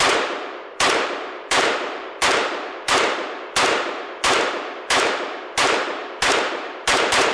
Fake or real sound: fake